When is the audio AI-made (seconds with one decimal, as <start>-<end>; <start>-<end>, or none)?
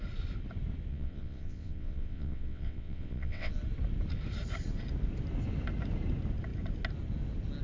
0.9-3.5